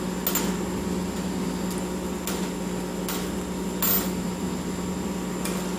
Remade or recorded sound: recorded